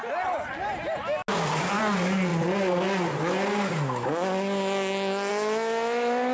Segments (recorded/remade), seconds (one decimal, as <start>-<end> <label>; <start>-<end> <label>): 0.0-6.3 recorded